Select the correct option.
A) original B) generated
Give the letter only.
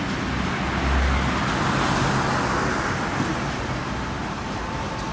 A